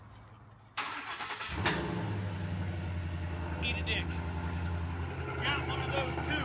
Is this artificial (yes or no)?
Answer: no